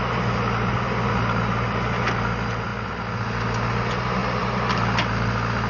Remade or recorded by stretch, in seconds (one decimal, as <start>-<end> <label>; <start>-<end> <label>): 0.0-5.7 recorded